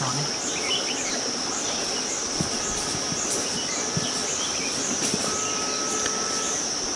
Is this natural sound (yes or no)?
yes